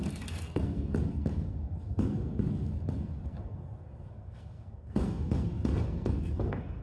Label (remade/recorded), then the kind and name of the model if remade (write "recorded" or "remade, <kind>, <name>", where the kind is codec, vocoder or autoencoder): remade, codec, SNAC